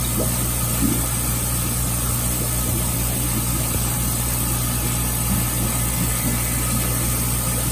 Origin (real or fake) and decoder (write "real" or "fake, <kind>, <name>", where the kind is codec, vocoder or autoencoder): real